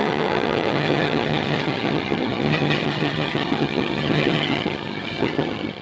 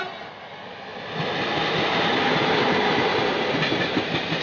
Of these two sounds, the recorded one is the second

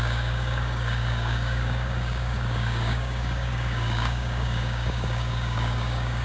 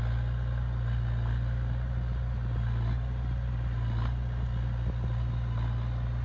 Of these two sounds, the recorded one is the second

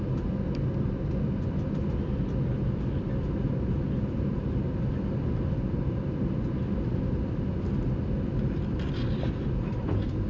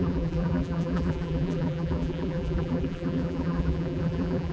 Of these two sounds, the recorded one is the first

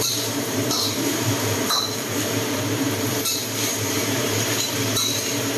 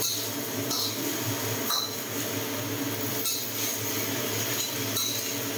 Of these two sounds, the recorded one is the second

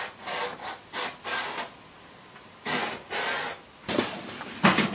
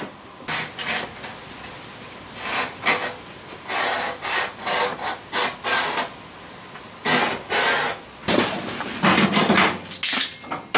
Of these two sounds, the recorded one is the second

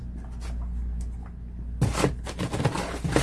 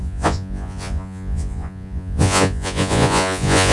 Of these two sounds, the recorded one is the first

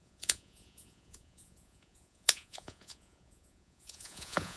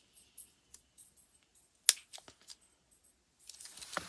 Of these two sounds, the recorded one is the second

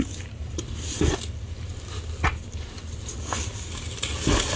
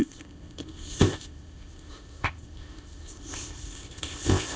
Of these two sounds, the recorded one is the first